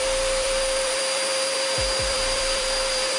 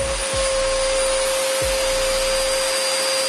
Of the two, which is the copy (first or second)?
first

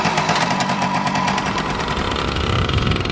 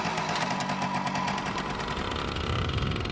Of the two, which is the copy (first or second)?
first